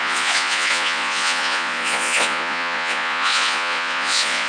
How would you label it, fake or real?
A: fake